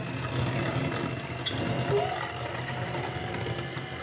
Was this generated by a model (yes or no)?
no